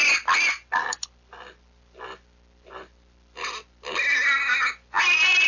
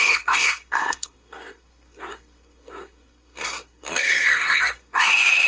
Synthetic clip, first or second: second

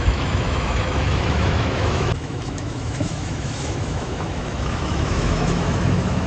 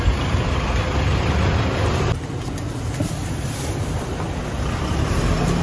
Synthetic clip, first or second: first